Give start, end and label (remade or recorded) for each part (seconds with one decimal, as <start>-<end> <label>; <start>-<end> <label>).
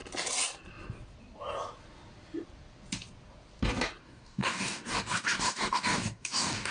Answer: 0.0-4.0 recorded; 4.0-6.7 remade